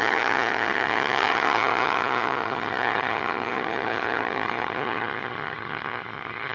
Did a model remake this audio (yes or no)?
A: yes